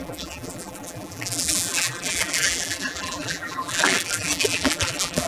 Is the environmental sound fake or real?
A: fake